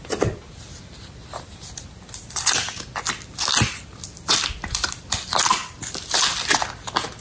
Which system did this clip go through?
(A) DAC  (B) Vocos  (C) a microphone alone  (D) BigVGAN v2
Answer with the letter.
C